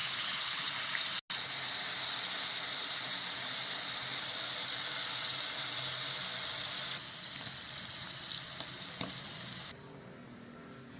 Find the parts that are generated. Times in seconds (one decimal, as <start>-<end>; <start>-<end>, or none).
0.0-0.7